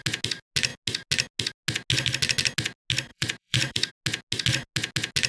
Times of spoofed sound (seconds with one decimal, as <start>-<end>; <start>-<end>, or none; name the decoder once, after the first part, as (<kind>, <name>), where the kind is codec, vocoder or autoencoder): 3.1-3.9 (vocoder, BigVGAN v2)